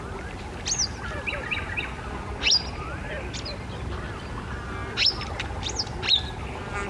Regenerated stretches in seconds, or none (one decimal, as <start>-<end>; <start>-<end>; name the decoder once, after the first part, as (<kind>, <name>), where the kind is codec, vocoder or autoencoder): none